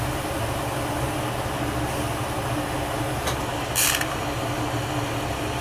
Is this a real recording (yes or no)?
yes